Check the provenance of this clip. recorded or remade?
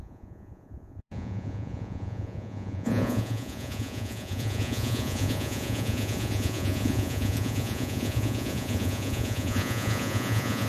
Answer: remade